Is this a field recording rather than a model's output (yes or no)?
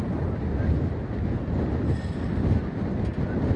yes